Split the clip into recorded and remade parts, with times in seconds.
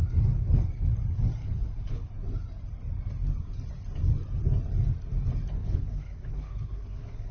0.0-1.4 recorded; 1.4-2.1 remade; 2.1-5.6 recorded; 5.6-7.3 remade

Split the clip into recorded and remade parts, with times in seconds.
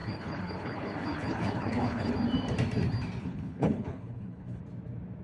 0.0-2.1 remade; 2.1-3.2 recorded; 3.2-4.6 remade; 4.6-5.2 recorded